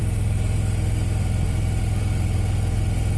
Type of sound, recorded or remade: recorded